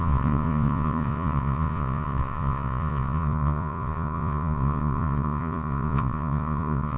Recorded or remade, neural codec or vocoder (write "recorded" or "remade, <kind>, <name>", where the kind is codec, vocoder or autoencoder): remade, vocoder, Vocos